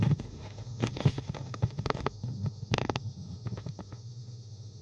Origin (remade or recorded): remade